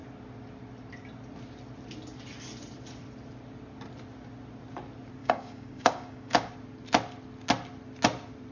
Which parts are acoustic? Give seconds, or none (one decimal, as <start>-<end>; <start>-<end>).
0.0-5.2; 6.5-8.5